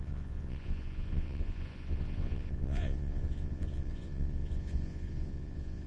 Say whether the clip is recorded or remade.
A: remade